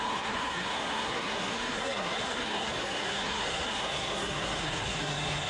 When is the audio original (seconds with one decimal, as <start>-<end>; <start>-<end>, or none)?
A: none